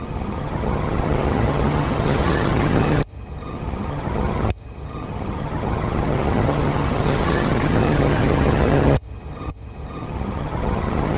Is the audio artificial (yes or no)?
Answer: yes